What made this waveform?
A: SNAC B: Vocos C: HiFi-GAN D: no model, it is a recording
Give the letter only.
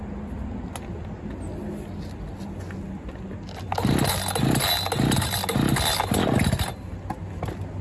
D